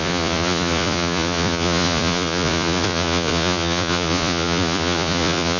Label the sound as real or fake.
fake